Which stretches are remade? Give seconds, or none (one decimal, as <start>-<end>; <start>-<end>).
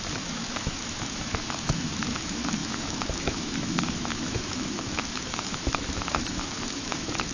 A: 0.0-7.3